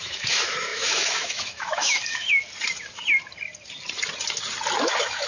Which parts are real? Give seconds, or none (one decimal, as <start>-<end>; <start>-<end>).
2.3-4.8